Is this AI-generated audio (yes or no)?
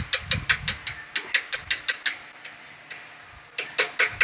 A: no